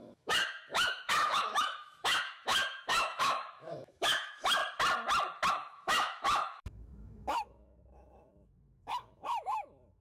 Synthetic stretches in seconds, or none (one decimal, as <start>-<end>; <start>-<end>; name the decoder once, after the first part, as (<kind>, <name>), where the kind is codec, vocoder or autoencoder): 0.0-4.6 (autoencoder, DAC-VAE); 5.5-10.0